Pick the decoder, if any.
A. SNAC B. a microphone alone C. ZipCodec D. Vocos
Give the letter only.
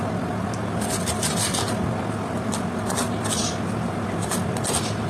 B